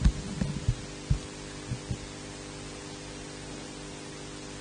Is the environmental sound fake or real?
real